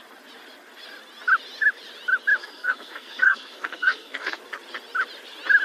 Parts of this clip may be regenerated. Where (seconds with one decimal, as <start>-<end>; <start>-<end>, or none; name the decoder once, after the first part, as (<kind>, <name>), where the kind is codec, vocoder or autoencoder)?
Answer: 2.4-4.4 (codec, SNAC)